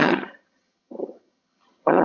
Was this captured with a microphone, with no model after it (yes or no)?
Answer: no